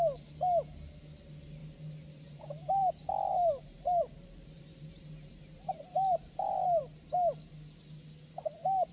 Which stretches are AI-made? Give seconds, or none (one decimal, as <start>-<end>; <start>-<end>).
1.6-2.9; 3.3-6.8